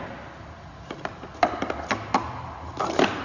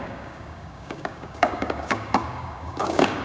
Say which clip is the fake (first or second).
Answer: second